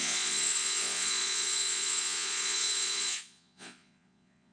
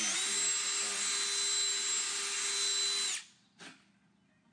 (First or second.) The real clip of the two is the second